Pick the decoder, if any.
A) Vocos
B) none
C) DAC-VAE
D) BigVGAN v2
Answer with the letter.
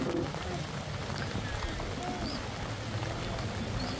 B